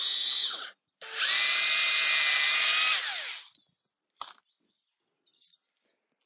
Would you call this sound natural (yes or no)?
yes